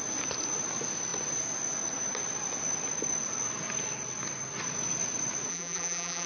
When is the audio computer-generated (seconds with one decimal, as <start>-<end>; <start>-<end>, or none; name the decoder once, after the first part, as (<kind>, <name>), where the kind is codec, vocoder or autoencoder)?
5.5-6.3 (vocoder, BigVGAN v2)